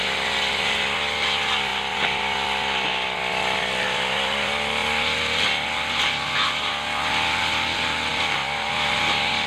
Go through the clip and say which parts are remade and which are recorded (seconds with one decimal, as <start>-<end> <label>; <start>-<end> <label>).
0.0-9.5 recorded